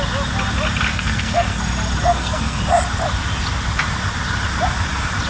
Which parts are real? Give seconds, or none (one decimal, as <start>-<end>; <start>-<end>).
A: 0.0-0.9; 1.6-2.1; 2.6-5.3